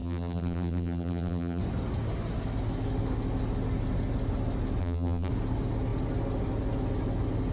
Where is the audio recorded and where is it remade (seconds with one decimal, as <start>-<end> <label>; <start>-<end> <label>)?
0.0-1.6 remade; 1.6-4.8 recorded; 4.8-5.3 remade; 5.3-7.5 recorded